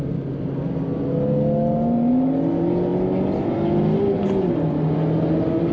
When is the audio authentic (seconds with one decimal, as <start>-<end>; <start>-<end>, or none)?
0.0-5.7

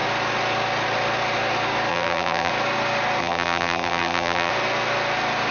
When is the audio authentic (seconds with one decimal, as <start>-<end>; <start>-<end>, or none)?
0.0-1.9; 2.5-3.2; 4.5-5.5

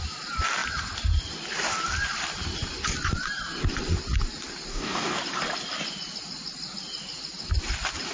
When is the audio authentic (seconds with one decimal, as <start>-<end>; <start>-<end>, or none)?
0.0-4.7; 5.2-8.1

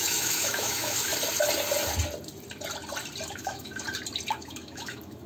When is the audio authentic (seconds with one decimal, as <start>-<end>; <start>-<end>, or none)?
1.1-3.3; 3.7-4.3

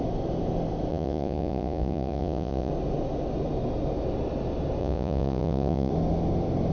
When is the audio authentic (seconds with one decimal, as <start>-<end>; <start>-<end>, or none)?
0.0-0.9; 2.7-4.8; 5.9-6.7

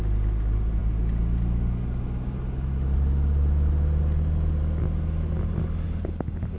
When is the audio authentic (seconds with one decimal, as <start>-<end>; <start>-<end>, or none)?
0.0-6.6

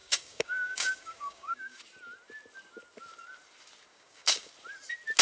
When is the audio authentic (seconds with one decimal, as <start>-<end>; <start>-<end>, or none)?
1.8-3.9; 4.5-5.2